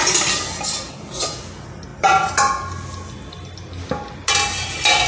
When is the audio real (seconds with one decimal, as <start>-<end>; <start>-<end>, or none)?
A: 0.0-5.1